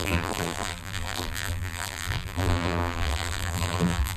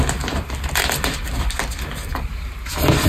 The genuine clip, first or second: second